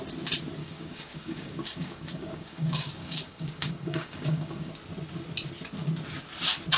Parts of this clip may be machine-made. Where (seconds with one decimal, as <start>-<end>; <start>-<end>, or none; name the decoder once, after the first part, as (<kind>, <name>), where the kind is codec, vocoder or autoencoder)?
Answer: 0.6-4.7 (codec, DAC)